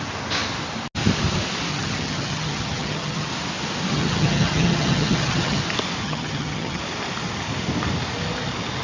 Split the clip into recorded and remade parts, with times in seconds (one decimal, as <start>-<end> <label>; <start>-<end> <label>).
0.0-1.7 recorded; 1.7-3.3 remade; 3.3-3.9 recorded; 3.9-5.6 remade; 5.6-6.0 recorded; 6.0-6.8 remade; 6.8-8.8 recorded